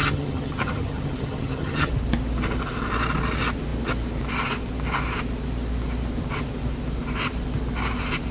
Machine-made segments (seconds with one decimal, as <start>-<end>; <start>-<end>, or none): 0.0-1.9